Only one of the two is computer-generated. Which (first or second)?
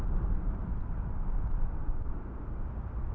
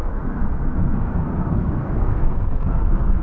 second